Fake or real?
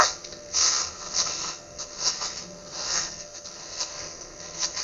fake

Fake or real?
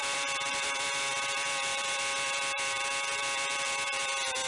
fake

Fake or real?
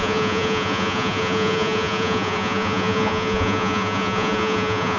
fake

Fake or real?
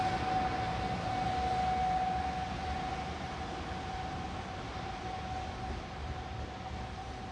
real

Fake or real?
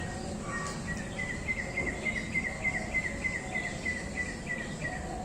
real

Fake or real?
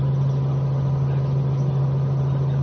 real